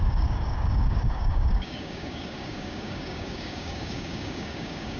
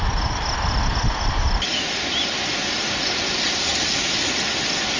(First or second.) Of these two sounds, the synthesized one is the first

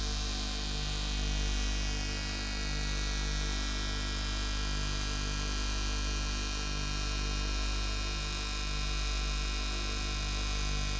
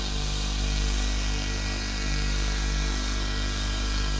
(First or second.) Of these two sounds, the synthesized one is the second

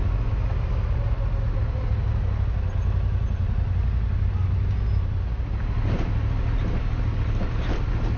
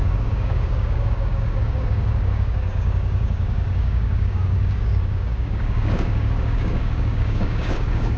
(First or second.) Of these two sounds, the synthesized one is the second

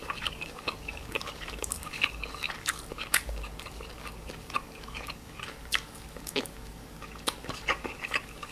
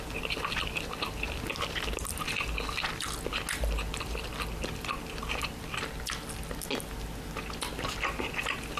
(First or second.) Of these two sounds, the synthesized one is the first